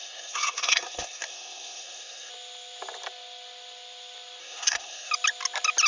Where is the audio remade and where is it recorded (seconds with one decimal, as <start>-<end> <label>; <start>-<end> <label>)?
0.0-2.3 remade; 2.3-4.4 recorded; 4.4-5.1 remade; 5.1-5.9 recorded